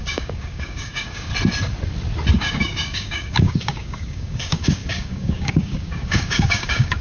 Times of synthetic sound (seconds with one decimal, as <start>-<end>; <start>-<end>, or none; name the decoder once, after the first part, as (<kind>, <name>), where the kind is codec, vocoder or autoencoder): 0.0-1.3 (codec, DAC); 2.3-7.0